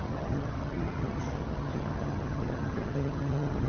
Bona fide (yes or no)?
no